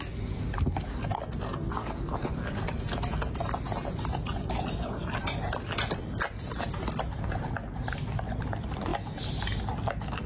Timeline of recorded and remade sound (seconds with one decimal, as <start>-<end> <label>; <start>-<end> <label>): 0.0-1.8 recorded; 1.8-2.8 remade; 2.8-10.3 recorded